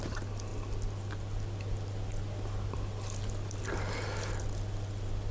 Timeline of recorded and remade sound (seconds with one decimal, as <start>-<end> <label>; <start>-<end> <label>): 0.0-5.3 recorded